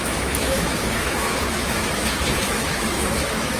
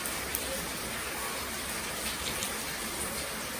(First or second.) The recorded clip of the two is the second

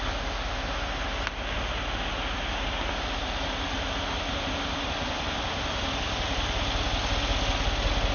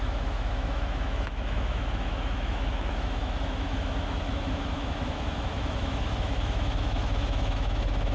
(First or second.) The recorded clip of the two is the first